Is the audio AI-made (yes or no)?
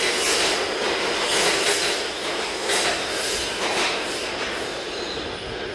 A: no